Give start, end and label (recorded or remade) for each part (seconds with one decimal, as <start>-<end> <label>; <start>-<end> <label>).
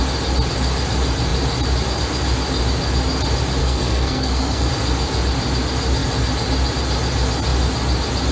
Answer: 0.0-3.6 recorded; 3.6-4.7 remade; 4.7-8.3 recorded